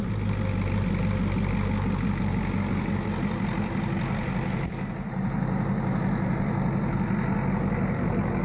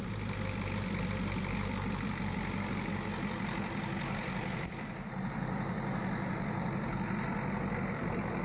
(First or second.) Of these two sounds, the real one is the first